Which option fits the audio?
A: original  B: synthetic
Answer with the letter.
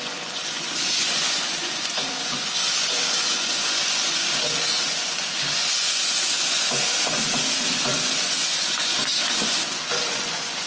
B